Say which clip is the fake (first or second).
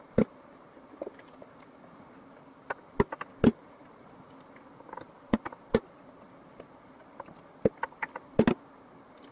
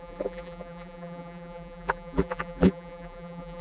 second